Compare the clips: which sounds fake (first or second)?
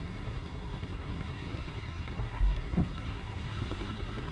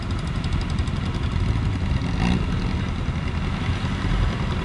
first